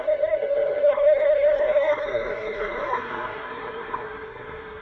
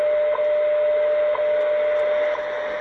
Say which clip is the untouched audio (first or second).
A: second